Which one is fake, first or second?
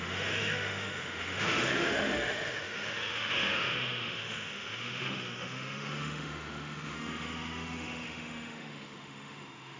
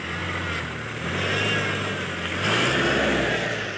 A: first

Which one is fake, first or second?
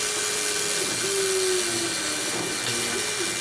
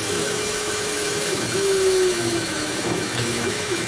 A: second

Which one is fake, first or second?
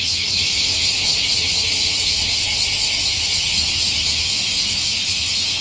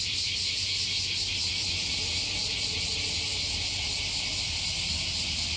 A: first